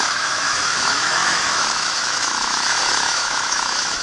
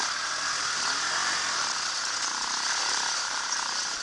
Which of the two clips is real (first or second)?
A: second